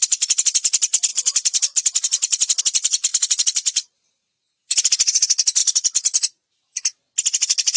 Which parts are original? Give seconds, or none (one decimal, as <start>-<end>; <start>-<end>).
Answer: 0.0-1.1; 2.6-3.1; 4.1-5.6; 6.6-7.8